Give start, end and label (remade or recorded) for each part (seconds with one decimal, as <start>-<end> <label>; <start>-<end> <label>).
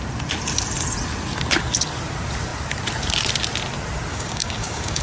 0.0-4.1 recorded; 4.1-5.0 remade